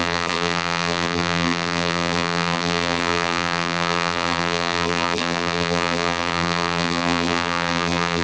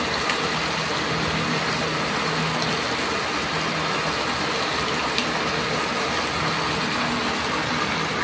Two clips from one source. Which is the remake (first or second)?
first